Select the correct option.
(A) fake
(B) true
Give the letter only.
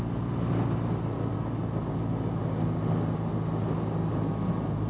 B